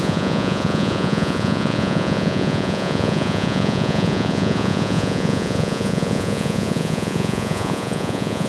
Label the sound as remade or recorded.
remade